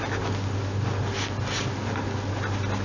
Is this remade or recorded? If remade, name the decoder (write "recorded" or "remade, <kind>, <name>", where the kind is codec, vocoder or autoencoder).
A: recorded